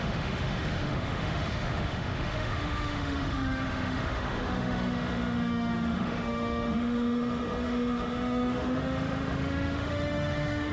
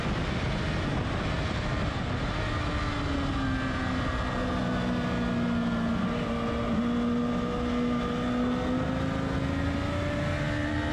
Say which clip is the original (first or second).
second